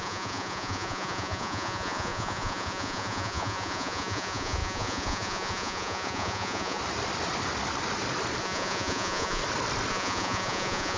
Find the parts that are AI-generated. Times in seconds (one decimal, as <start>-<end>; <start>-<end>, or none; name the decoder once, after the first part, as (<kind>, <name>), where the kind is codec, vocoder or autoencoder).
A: 0.0-6.8 (vocoder, Vocos); 8.4-9.4; 9.9-11.0